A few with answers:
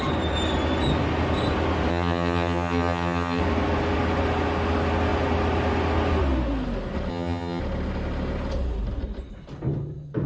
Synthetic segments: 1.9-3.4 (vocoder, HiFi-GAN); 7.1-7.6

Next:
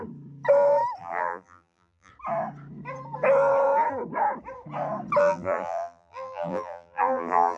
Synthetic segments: 1.0-2.1 (vocoder, BigVGAN v2); 5.2-7.6

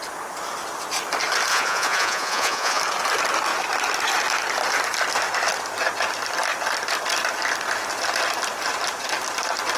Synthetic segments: 1.5-2.8 (vocoder, Vocos)

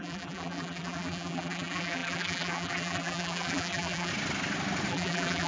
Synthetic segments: 0.0-4.1 (vocoder, BigVGAN v2); 4.9-5.5

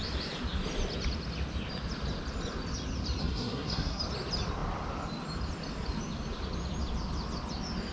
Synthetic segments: 3.2-4.0 (codec, SNAC)

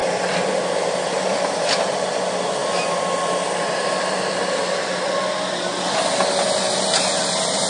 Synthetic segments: none

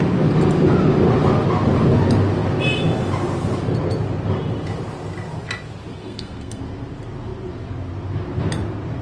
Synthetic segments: 6.0-6.6 (codec, SNAC)